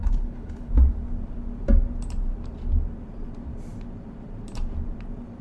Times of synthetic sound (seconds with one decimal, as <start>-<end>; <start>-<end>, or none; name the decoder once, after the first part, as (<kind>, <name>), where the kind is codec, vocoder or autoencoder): 0.0-0.7 (codec, HILCodec)